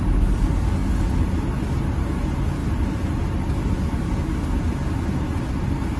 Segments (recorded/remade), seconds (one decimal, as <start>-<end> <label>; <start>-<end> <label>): 0.0-6.0 recorded